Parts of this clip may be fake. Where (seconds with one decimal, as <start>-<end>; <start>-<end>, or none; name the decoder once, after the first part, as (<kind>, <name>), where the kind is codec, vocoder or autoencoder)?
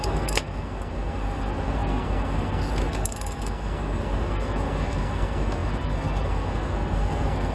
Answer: 0.0-7.5 (codec, SNAC)